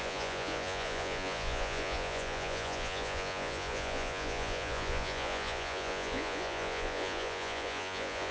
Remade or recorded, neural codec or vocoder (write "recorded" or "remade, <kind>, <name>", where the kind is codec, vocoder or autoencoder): remade, vocoder, Vocos